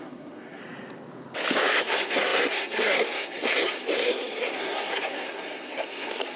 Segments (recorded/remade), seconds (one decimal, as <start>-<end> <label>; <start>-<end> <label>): 0.0-0.6 remade; 0.6-1.8 recorded; 1.8-6.4 remade